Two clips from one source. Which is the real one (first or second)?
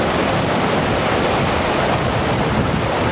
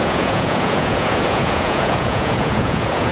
first